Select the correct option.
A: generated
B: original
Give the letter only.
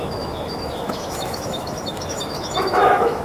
A